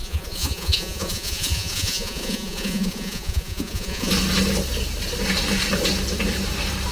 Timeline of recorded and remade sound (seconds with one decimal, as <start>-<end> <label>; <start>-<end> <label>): 0.0-4.1 remade; 4.1-6.9 recorded